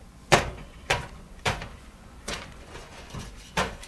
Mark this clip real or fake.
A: fake